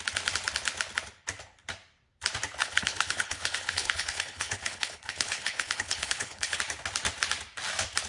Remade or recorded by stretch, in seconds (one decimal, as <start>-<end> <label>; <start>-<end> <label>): 0.0-2.6 recorded; 2.6-6.6 remade; 6.6-8.1 recorded